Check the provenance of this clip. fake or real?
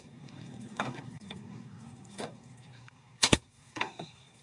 fake